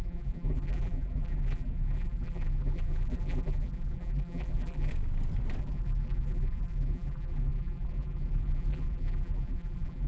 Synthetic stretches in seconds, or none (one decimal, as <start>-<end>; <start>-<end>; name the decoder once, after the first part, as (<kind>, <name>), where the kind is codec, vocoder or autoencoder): 0.0-4.9 (vocoder, BigVGAN v2); 5.6-10.1